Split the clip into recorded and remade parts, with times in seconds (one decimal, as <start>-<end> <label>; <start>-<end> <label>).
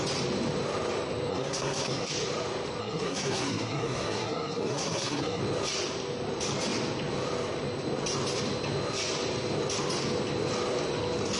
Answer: 0.0-1.3 recorded; 1.3-2.1 remade; 2.1-2.8 recorded; 2.8-5.4 remade; 5.4-11.4 recorded